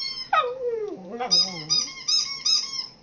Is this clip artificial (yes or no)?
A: yes